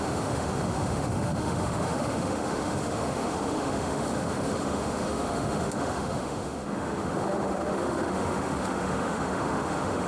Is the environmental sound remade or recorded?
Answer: remade